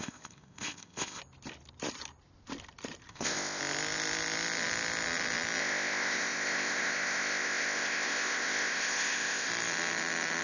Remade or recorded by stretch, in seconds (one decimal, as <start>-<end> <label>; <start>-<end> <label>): 0.0-1.2 remade; 1.2-3.1 recorded; 3.1-3.6 remade; 3.6-5.6 recorded; 5.6-9.5 remade; 9.5-10.4 recorded